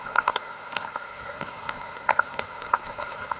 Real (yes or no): no